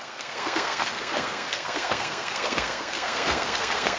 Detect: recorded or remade remade